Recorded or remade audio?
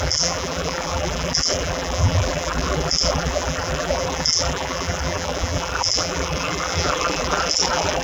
remade